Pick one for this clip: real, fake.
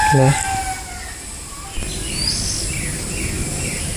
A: real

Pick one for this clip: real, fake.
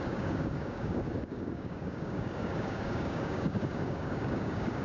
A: fake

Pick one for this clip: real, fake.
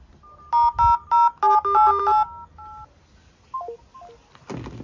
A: real